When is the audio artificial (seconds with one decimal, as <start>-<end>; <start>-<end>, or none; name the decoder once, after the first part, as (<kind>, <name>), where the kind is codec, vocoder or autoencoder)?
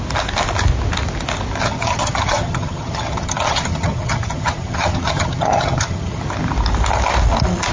1.6-6.2 (vocoder, HiFi-GAN)